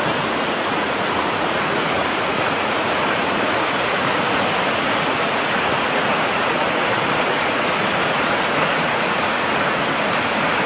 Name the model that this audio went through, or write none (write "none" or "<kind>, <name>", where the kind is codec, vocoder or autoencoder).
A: vocoder, Vocos